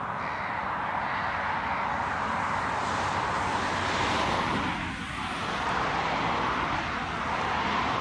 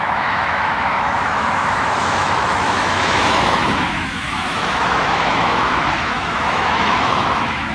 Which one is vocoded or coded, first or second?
second